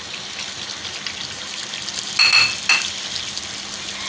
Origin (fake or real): real